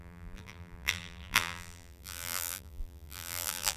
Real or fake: fake